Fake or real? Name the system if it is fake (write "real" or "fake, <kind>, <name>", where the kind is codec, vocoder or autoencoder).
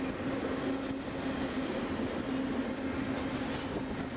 real